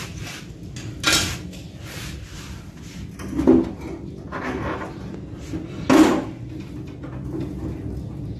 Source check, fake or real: real